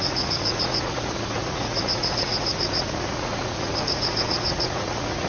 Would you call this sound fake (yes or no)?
yes